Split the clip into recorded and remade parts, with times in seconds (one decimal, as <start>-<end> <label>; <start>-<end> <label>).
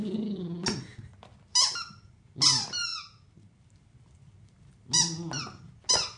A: 0.0-6.2 recorded